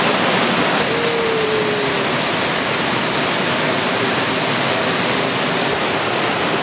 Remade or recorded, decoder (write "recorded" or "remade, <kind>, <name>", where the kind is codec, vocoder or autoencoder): recorded